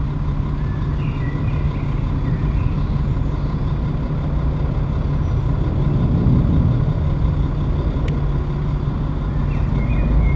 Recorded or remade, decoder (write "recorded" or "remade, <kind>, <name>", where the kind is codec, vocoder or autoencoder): recorded